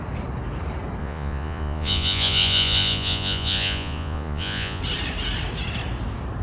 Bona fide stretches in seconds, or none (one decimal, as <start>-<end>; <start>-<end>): 0.0-1.0; 4.8-6.4